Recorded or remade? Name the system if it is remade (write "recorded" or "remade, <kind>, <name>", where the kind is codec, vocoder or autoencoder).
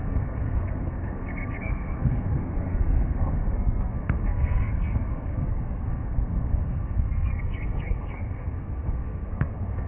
remade, codec, SNAC